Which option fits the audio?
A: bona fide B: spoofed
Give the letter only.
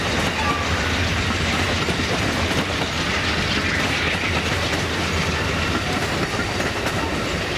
A